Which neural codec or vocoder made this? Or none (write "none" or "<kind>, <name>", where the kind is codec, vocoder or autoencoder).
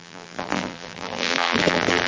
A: vocoder, BigVGAN v2